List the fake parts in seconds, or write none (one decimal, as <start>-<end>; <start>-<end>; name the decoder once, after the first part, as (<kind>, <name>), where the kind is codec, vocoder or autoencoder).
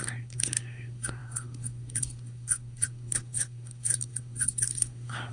0.0-5.3 (codec, SNAC)